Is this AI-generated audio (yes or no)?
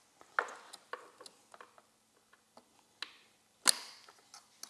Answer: no